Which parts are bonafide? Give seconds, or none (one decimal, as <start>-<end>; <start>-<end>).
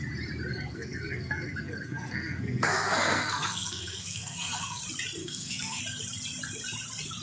0.0-0.5; 4.8-5.2; 5.8-7.2